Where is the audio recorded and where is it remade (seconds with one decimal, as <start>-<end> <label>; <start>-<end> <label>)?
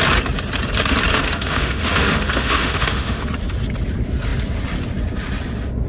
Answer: 0.0-1.1 recorded; 1.1-3.2 remade; 3.2-5.9 recorded